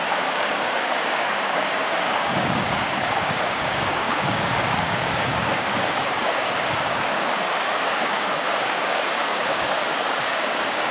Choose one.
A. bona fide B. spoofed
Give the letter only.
B